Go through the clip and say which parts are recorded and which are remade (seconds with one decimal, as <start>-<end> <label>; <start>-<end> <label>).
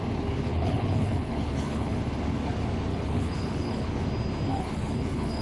0.0-0.5 recorded; 0.5-2.0 remade; 2.0-2.9 recorded; 2.9-4.0 remade; 4.0-4.5 recorded; 4.5-5.4 remade